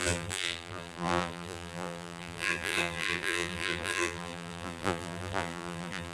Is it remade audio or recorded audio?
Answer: remade